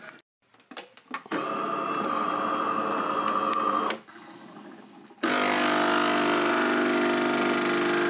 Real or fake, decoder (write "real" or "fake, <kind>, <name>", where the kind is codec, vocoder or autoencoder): real